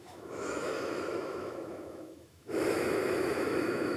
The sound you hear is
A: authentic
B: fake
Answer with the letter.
B